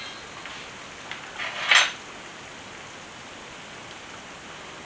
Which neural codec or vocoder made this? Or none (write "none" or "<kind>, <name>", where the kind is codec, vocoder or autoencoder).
none